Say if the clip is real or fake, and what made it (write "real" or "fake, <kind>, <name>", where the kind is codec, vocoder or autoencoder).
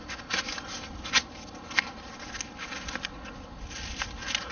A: real